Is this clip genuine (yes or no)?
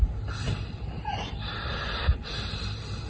yes